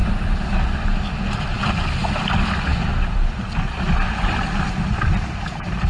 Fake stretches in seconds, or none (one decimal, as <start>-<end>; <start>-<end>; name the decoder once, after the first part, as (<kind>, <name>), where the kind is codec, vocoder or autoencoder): none